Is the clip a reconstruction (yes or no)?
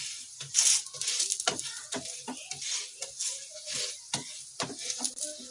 no